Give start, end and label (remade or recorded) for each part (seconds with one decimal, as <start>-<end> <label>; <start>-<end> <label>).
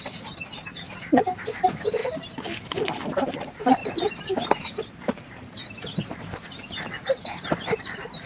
0.0-2.0 remade; 2.0-3.1 recorded; 3.1-8.3 remade